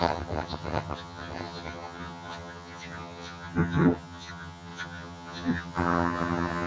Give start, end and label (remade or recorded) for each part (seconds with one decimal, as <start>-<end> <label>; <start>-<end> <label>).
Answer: 0.0-6.7 remade